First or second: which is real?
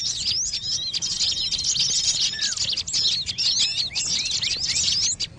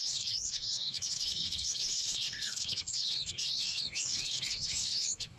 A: first